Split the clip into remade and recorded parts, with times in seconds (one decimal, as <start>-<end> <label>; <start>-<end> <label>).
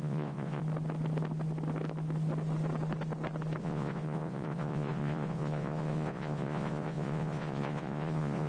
0.0-0.6 remade; 0.6-3.6 recorded; 3.6-8.5 remade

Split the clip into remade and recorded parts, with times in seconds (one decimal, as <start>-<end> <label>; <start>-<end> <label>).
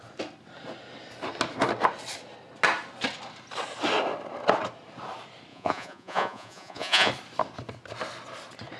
0.0-5.5 recorded; 5.5-7.1 remade; 7.1-8.8 recorded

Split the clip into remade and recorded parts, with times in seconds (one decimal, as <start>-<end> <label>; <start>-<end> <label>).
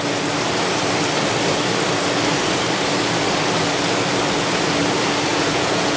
0.0-5.3 recorded; 5.3-6.0 remade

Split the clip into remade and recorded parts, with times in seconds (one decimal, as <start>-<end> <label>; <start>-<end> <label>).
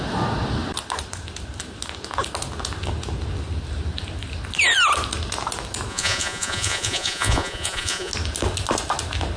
0.0-5.9 recorded; 5.9-8.1 remade; 8.1-9.4 recorded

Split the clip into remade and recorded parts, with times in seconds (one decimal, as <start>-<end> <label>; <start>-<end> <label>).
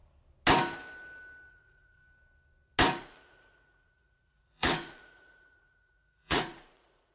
0.0-1.5 recorded; 1.5-2.0 remade; 2.0-3.0 recorded; 3.0-7.1 remade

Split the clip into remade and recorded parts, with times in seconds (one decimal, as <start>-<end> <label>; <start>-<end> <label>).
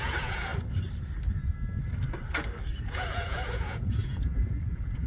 0.0-0.5 remade; 0.5-2.8 recorded; 2.8-5.1 remade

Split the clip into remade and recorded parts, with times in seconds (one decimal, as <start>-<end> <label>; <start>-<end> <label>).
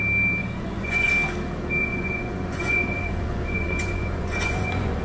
0.0-0.4 recorded; 0.4-1.1 remade; 1.1-1.8 recorded; 1.8-5.0 remade